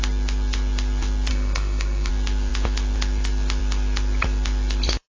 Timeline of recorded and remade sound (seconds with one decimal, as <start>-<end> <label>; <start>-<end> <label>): 0.0-1.3 recorded; 1.3-2.1 remade; 2.1-5.2 recorded